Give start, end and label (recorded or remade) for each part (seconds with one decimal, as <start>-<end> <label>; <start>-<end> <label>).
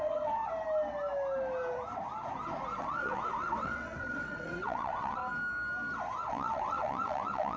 0.0-0.4 remade; 0.4-2.8 recorded; 2.8-5.2 remade; 5.2-6.3 recorded; 6.3-7.6 remade